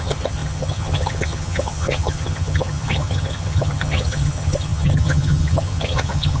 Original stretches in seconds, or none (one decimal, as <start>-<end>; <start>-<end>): none